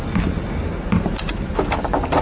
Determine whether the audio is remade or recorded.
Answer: recorded